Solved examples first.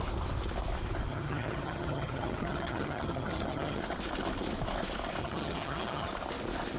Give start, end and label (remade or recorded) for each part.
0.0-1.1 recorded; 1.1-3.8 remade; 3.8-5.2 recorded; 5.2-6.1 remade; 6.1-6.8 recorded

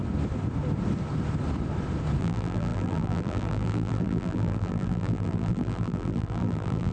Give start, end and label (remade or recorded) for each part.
0.0-2.2 recorded; 2.2-6.9 remade

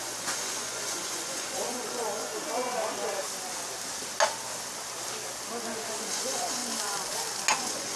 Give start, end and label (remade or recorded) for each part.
0.0-2.3 remade; 2.3-6.0 recorded; 6.0-6.6 remade; 6.6-7.6 recorded; 7.6-8.0 remade

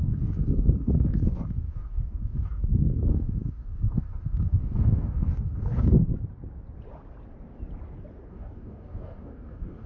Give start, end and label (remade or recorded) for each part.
0.0-6.1 remade; 6.1-8.3 recorded; 8.3-9.9 remade